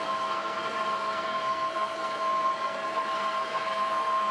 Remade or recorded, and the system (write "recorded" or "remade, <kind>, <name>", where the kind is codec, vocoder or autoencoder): remade, codec, SNAC